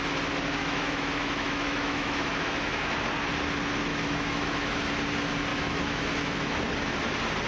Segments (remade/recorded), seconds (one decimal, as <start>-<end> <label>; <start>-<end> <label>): 0.0-0.6 recorded; 0.6-2.9 remade; 2.9-3.9 recorded; 3.9-4.8 remade; 4.8-5.5 recorded; 5.5-6.6 remade; 6.6-7.5 recorded